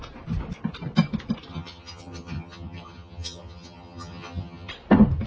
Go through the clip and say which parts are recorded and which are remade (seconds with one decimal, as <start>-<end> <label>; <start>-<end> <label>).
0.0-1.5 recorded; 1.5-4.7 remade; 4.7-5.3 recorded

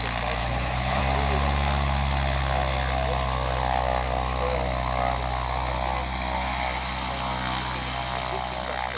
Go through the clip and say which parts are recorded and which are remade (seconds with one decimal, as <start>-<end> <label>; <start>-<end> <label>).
0.0-0.4 recorded; 0.4-1.0 remade; 1.0-9.0 recorded

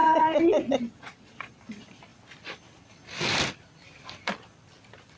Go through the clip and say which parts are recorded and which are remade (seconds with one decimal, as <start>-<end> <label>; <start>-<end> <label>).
0.0-1.5 remade; 1.5-5.2 recorded